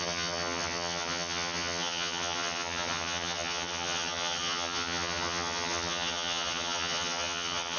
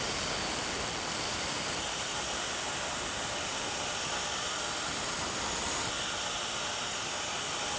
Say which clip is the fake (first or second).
first